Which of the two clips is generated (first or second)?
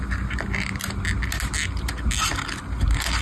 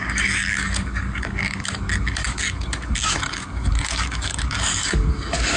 second